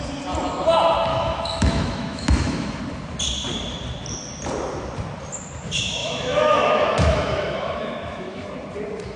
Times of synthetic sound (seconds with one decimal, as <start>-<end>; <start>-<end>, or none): 1.1-2.8; 6.0-8.5